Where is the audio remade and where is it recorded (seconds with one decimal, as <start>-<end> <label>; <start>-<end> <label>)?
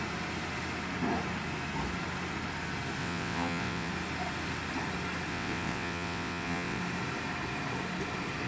0.0-3.0 recorded; 3.0-3.9 remade; 3.9-5.3 recorded; 5.3-6.8 remade; 6.8-8.5 recorded